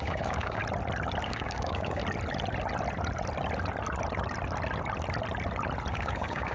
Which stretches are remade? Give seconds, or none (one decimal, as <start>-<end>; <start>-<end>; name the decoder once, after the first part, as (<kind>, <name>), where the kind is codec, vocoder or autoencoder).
0.0-0.6 (codec, DAC); 1.2-2.0; 5.9-6.5